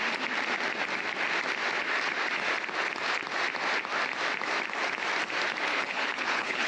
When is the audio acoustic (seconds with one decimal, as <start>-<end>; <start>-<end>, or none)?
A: 0.0-5.7